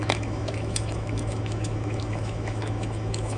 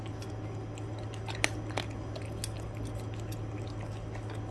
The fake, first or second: first